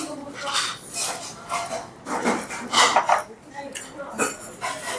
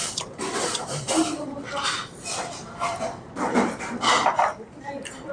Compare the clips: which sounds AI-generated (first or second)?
second